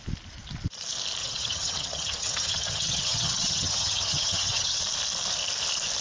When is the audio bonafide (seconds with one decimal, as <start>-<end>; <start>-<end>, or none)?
0.0-1.2; 4.8-6.0